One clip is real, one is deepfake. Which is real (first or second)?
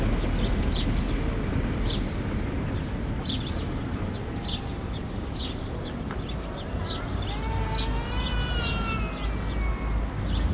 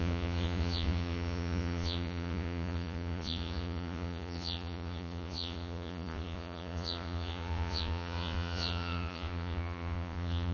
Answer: first